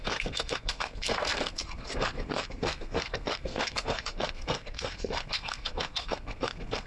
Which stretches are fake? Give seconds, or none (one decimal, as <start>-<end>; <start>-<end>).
0.0-6.9